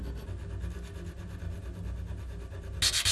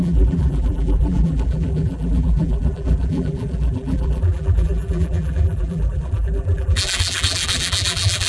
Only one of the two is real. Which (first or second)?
first